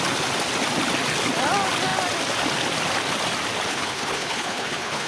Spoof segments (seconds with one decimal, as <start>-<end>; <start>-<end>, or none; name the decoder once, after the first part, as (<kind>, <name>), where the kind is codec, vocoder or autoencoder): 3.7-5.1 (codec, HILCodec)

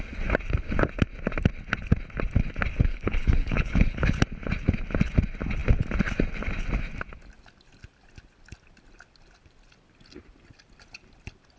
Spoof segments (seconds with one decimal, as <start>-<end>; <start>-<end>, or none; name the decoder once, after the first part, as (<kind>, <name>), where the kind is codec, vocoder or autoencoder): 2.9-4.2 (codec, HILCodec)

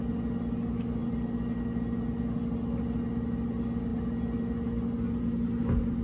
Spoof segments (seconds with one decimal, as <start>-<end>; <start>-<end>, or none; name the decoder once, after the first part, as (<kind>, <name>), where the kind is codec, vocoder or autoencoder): none

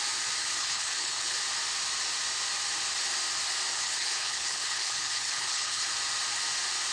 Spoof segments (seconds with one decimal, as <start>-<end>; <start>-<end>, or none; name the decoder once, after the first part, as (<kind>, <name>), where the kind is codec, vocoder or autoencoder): 0.4-1.4 (codec, HILCodec); 3.7-5.9

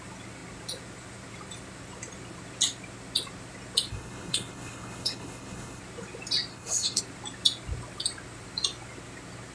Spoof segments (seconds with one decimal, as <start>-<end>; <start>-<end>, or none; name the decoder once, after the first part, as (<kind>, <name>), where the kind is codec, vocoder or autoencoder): 3.9-5.8 (codec, HILCodec); 6.5-7.0

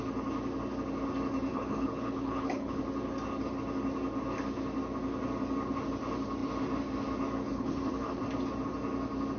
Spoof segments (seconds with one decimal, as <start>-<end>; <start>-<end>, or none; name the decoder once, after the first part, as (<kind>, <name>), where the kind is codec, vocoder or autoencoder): 1.5-2.8 (codec, HILCodec); 7.5-8.2

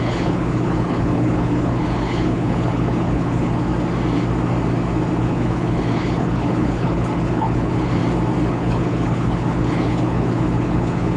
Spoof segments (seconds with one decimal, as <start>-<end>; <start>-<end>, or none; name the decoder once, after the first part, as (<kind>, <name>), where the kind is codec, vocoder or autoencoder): 0.0-3.7 (codec, HILCodec); 5.2-8.0; 8.5-11.2

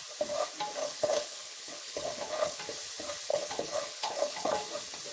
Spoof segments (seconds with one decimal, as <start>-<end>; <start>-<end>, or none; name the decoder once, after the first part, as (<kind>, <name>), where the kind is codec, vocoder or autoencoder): 0.8-2.6 (codec, HILCodec); 3.3-4.5